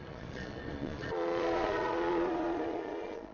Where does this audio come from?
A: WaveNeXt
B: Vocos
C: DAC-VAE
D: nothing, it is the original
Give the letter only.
B